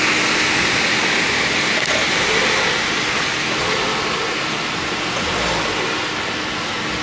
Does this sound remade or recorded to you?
recorded